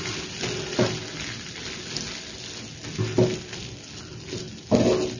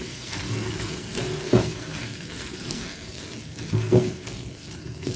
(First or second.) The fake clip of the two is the second